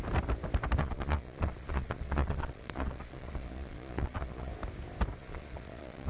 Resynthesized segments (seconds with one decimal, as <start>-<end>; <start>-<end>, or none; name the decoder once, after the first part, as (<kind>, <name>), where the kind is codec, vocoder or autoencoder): 0.8-4.5 (vocoder, Vocos); 5.2-6.1